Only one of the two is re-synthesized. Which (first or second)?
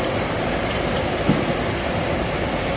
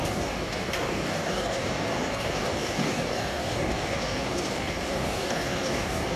second